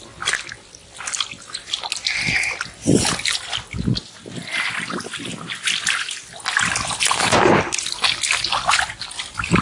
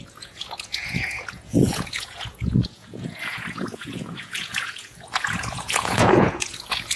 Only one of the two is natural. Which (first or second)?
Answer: first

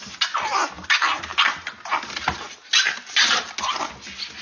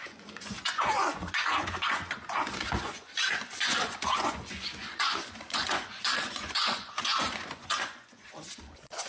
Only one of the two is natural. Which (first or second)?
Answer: first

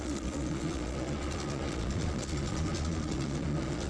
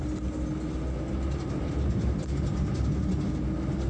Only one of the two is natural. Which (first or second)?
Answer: second